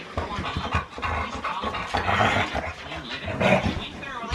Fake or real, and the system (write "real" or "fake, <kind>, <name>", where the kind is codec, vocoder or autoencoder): real